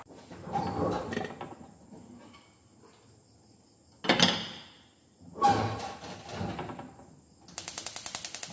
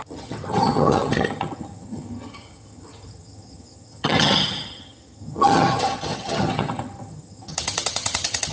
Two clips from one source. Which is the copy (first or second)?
second